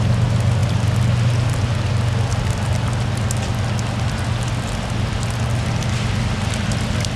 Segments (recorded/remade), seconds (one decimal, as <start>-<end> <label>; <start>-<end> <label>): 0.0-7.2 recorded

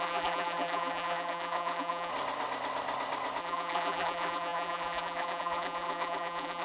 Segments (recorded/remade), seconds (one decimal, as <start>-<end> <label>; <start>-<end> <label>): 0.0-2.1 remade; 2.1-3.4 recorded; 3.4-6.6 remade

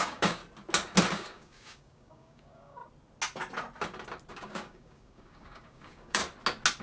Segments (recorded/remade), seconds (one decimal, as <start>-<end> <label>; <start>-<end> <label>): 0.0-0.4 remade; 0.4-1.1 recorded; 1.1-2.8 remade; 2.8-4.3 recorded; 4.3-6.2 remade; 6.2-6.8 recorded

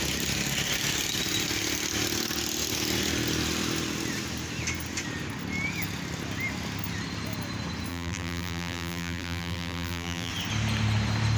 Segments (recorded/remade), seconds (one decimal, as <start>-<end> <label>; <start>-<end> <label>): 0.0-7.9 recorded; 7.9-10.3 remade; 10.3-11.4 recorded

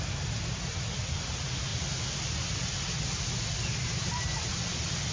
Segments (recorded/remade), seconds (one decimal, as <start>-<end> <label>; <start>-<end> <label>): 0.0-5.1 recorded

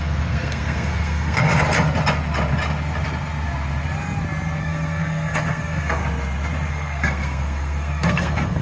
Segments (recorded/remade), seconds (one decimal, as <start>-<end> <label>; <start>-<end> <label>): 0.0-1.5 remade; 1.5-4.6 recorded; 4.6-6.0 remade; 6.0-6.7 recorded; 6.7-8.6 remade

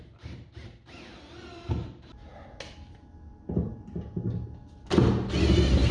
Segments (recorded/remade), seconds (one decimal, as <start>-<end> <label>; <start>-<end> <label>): 0.0-5.9 recorded